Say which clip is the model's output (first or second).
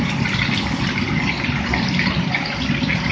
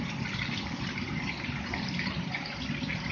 second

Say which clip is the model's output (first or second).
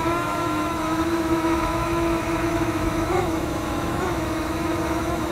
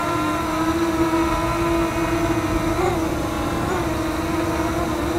first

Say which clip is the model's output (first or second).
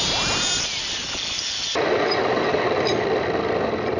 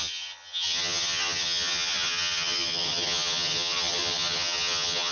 second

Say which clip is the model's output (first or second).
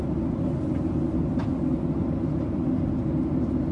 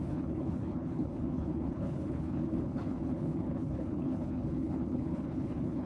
second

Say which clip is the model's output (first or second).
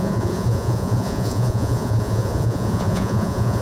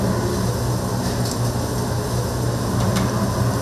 first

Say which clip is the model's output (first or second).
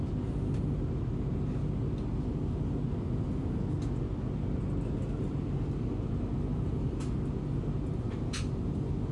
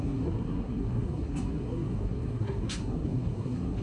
second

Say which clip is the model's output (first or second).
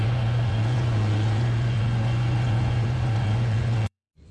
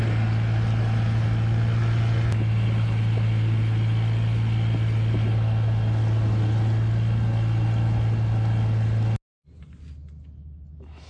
first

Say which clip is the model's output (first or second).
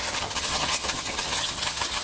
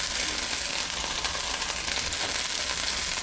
first